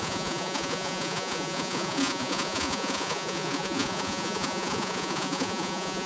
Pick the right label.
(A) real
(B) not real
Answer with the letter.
B